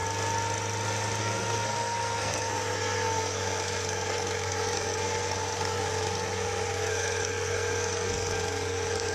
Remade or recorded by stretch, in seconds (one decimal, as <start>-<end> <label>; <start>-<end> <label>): 0.0-1.2 recorded; 1.2-9.1 remade